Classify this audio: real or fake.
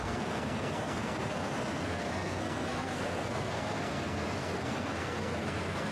fake